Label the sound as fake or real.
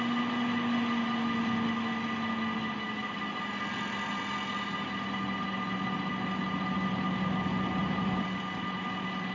real